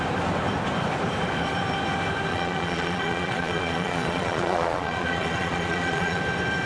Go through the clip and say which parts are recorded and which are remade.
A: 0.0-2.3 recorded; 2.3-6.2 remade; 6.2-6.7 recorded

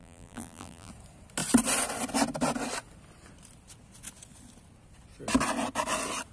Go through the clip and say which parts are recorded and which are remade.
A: 0.0-0.9 remade; 0.9-6.3 recorded

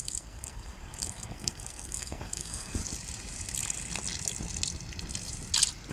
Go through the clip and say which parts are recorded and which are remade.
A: 0.0-2.8 remade; 2.8-5.9 recorded

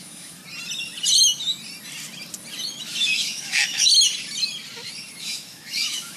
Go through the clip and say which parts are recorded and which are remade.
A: 0.0-0.4 remade; 0.4-2.8 recorded; 2.8-3.9 remade; 3.9-5.2 recorded; 5.2-6.2 remade